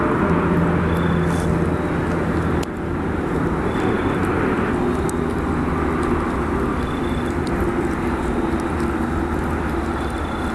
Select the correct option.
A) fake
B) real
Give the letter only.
B